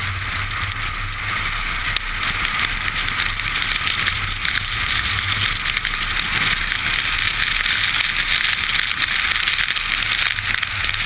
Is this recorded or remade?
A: recorded